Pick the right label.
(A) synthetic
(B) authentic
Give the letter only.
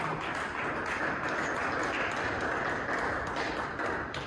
B